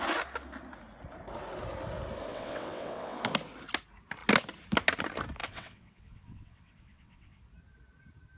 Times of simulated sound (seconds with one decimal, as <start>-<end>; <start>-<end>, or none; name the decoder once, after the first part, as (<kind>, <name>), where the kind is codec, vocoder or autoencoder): 2.3-3.2 (vocoder, WaveNeXt); 5.4-7.4

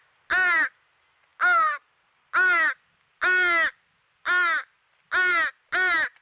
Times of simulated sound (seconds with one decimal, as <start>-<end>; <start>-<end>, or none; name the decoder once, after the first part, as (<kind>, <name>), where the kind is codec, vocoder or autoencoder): none

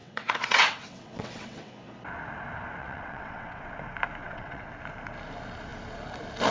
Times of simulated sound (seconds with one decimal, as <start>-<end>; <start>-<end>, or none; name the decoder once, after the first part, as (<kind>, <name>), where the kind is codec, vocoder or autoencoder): 0.0-1.7 (vocoder, WaveNeXt); 2.8-3.7; 4.2-4.7

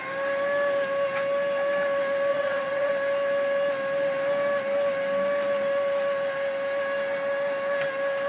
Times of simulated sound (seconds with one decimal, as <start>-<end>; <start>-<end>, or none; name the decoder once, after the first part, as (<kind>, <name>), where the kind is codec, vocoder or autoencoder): 2.3-2.9 (vocoder, WaveNeXt)

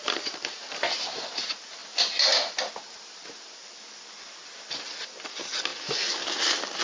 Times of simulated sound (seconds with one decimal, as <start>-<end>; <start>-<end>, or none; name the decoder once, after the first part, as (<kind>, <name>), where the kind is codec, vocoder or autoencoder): none